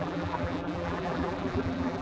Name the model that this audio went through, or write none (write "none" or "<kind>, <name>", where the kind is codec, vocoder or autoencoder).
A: vocoder, BigVGAN v2